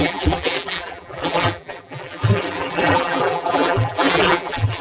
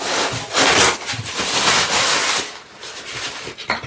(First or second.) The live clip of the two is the second